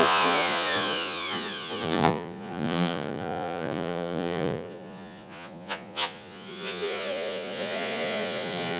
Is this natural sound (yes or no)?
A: no